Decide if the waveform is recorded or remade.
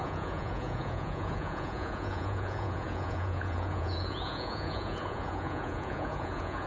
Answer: remade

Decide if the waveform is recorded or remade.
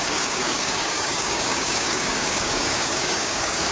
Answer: remade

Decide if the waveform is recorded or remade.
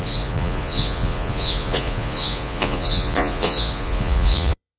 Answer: remade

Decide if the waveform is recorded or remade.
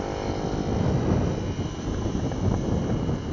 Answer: recorded